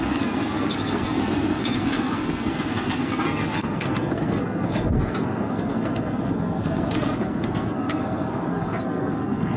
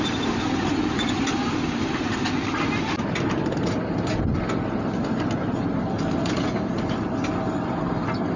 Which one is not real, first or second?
first